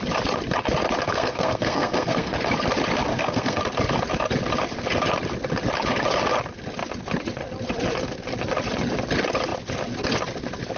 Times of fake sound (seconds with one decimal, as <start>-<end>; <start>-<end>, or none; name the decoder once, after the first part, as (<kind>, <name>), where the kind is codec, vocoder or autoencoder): 1.1-2.3 (codec, SNAC); 3.1-3.6